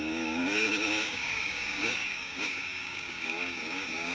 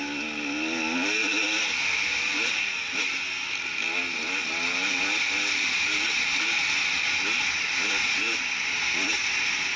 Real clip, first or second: second